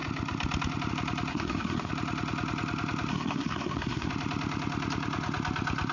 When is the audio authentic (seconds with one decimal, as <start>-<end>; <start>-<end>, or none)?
0.0-1.3; 1.9-3.1; 4.1-5.9